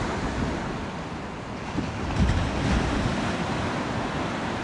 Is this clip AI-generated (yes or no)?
no